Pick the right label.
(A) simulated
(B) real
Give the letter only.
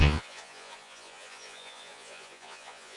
A